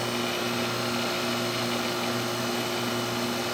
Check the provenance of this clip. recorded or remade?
recorded